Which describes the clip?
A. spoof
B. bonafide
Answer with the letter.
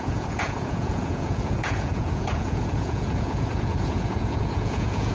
A